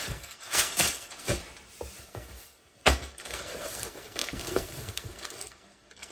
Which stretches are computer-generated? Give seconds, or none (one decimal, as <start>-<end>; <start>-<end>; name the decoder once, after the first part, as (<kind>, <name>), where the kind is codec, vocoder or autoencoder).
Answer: 0.0-1.4 (codec, SNAC); 2.0-6.1